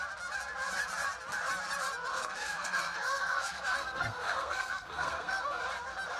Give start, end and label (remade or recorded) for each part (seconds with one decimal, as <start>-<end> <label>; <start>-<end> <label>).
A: 0.0-2.1 recorded; 2.1-5.6 remade; 5.6-6.2 recorded